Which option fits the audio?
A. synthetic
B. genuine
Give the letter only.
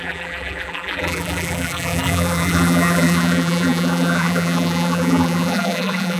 A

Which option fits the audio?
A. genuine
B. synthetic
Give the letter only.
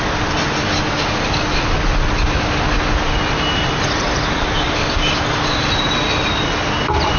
A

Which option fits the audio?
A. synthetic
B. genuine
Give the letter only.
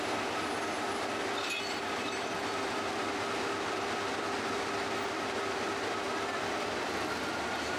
B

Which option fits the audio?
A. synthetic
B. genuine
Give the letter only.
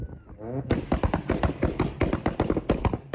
A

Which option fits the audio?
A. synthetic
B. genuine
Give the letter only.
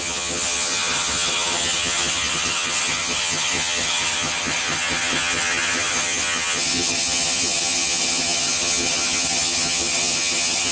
A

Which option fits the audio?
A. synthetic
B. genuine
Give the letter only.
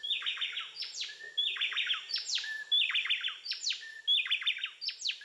B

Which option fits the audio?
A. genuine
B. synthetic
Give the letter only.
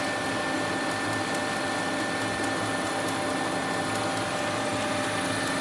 A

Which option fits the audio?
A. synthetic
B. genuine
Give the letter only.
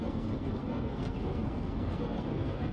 A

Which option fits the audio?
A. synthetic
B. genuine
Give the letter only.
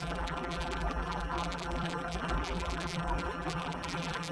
A